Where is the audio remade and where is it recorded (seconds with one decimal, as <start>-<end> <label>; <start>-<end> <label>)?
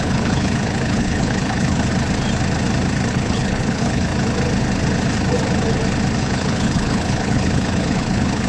0.0-1.9 remade; 1.9-3.1 recorded; 3.1-4.1 remade; 4.1-6.2 recorded; 6.2-8.5 remade